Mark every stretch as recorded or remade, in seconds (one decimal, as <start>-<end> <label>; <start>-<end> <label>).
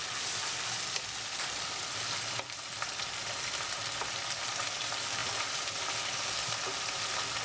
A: 0.0-3.8 remade; 3.8-5.2 recorded; 5.2-5.9 remade; 5.9-7.4 recorded